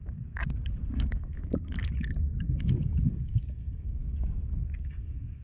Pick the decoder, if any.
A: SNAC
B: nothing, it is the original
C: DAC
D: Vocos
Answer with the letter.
C